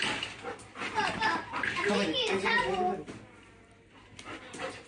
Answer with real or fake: real